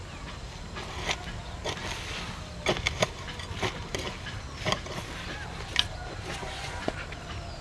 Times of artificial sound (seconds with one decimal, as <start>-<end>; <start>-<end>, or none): 6.4-7.0